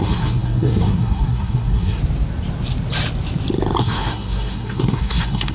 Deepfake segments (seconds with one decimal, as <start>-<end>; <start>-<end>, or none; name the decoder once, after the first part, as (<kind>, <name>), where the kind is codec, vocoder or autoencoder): 0.0-2.0 (codec, SNAC); 3.8-5.5